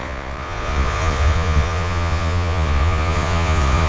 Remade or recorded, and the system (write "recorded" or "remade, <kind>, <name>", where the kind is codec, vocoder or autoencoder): remade, vocoder, Vocos